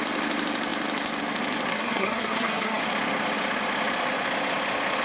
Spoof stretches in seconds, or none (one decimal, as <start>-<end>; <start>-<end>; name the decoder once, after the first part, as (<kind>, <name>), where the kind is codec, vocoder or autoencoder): 1.7-2.8 (codec, SNAC)

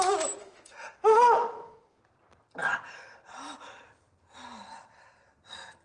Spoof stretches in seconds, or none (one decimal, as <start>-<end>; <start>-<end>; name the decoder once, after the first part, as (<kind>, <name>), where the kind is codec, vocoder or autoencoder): 0.4-2.0 (autoencoder, DAC-VAE)

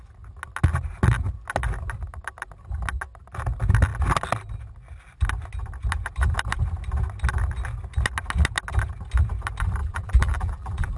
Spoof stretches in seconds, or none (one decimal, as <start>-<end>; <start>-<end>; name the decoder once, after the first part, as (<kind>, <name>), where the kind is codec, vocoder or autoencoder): 9.8-11.0 (vocoder, BigVGAN v2)

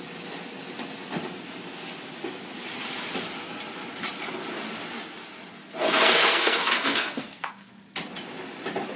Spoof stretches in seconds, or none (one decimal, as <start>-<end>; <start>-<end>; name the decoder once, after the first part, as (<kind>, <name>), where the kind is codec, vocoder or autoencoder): 5.8-7.7 (codec, SNAC)

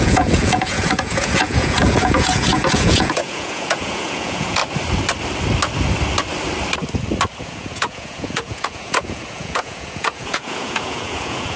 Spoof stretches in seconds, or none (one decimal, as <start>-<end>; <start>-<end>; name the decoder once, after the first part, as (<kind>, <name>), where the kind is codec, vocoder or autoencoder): 0.0-4.6 (vocoder, Vocos); 7.4-11.6

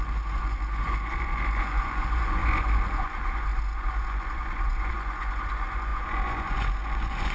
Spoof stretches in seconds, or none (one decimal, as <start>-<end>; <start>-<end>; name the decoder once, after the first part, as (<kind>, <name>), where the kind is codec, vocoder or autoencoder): 0.0-7.3 (vocoder, Vocos)